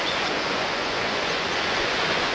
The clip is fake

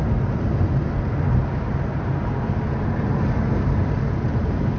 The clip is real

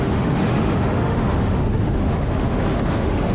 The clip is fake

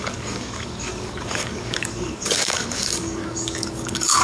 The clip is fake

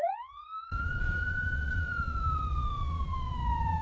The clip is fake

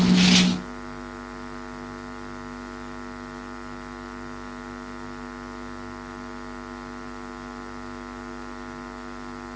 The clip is real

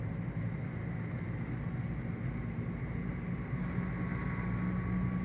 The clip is real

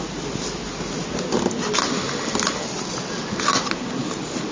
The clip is real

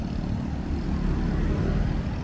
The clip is real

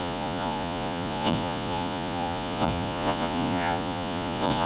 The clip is fake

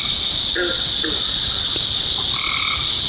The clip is real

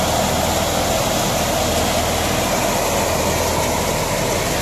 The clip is real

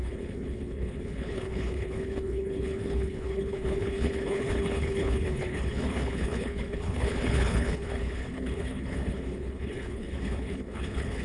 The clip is fake